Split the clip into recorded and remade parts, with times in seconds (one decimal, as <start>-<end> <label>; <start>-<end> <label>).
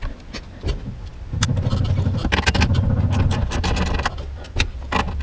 0.0-5.2 recorded